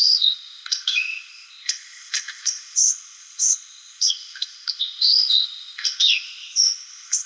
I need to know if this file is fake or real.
fake